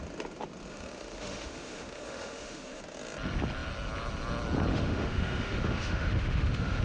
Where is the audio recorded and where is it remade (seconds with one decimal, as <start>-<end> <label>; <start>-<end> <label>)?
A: 0.0-0.7 recorded; 0.7-2.8 remade; 2.8-4.7 recorded; 4.7-6.8 remade